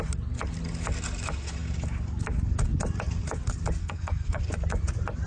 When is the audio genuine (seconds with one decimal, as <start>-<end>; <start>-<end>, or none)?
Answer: 0.0-3.8; 4.4-5.3